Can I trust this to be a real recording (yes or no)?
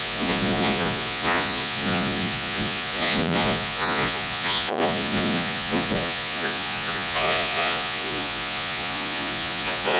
no